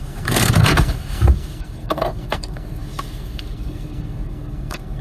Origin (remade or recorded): remade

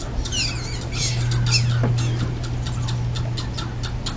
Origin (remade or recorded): recorded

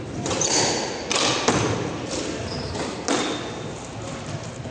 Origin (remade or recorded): recorded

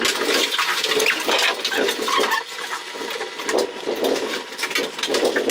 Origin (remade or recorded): recorded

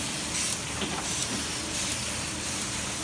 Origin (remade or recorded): recorded